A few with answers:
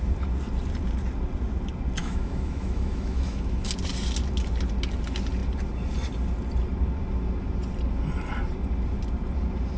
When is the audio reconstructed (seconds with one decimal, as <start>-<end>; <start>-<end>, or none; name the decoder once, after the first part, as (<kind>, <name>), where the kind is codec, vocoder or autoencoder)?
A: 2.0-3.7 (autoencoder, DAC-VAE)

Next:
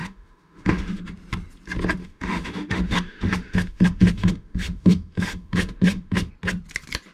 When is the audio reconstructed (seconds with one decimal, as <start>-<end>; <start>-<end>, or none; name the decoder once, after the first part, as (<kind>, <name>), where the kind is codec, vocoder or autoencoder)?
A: 0.0-1.0 (autoencoder, DAC-VAE); 2.0-6.3

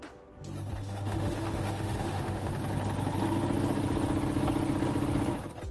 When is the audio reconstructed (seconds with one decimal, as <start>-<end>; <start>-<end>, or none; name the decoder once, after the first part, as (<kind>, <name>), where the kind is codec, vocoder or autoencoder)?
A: 0.8-2.5 (autoencoder, DAC-VAE)

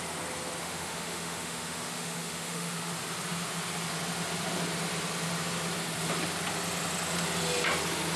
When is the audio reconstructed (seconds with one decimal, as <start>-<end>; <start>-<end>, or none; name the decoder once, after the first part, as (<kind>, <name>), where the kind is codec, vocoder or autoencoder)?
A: 0.6-2.9 (autoencoder, DAC-VAE)

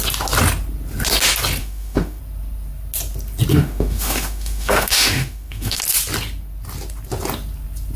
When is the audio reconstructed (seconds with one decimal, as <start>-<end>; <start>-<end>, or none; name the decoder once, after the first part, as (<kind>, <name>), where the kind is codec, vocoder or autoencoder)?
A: 1.6-2.2 (autoencoder, DAC-VAE); 3.5-5.8

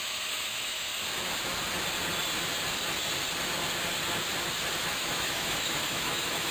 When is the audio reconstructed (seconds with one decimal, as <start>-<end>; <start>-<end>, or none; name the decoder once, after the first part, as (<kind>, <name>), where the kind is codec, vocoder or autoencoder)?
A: 0.0-0.9 (autoencoder, DAC-VAE); 4.8-6.5

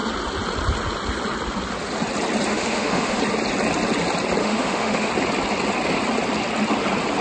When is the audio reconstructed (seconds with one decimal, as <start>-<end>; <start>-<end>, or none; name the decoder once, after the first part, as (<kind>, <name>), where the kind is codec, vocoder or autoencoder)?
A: 2.5-3.2 (autoencoder, DAC-VAE); 4.4-5.1